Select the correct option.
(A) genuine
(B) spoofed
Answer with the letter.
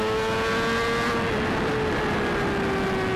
A